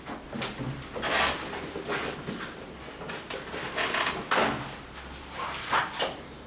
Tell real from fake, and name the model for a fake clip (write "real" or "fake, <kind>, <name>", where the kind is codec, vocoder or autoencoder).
real